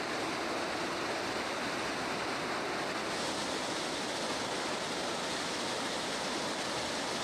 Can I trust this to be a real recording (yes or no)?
yes